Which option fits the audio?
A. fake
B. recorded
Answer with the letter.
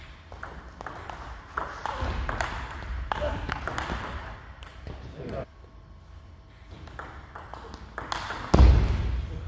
B